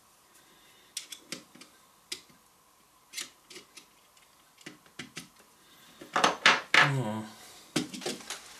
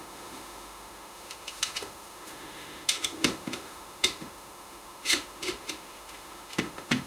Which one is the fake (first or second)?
second